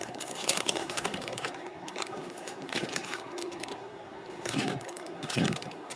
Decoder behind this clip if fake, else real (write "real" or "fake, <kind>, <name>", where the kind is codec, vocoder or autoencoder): fake, codec, SNAC